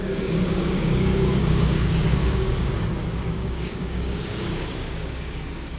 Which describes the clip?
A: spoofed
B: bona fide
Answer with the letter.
A